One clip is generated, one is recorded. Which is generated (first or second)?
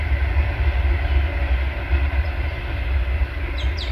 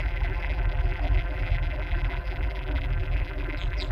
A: second